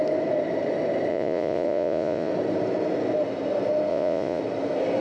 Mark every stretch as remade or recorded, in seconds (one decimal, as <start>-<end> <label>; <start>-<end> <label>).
0.0-1.1 recorded; 1.1-2.3 remade; 2.3-3.9 recorded; 3.9-4.4 remade; 4.4-5.0 recorded